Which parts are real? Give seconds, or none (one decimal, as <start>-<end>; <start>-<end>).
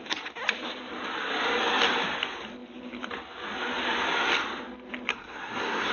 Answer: 0.0-5.1